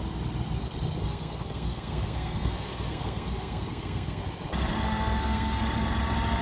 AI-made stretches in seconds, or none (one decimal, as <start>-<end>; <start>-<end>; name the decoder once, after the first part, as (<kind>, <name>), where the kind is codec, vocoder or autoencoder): 1.0-4.2 (codec, SNAC); 4.7-5.6